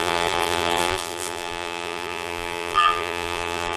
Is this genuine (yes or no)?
no